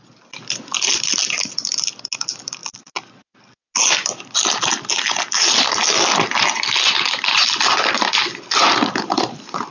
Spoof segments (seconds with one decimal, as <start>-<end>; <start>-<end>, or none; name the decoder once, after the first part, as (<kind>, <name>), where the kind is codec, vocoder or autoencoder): none